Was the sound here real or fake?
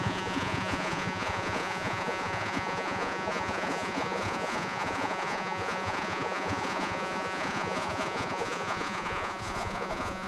fake